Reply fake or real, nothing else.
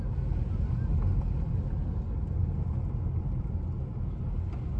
real